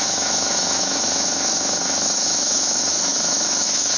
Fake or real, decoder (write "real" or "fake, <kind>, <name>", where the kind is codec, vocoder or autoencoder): fake, autoencoder, DAC-VAE